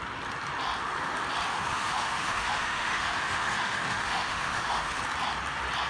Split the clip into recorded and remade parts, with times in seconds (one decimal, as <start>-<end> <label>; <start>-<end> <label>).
0.0-1.5 recorded; 1.5-5.0 remade; 5.0-5.9 recorded